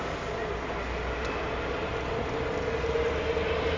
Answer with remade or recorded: recorded